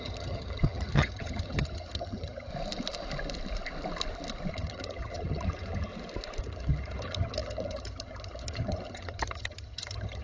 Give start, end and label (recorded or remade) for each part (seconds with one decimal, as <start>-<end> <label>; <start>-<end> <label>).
0.0-2.5 remade; 2.5-4.5 recorded; 4.5-5.9 remade; 5.9-6.4 recorded; 6.4-10.2 remade